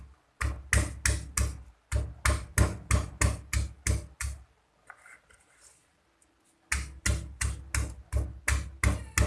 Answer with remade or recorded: recorded